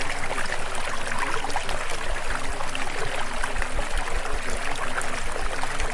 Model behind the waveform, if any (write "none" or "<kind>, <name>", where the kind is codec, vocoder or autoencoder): none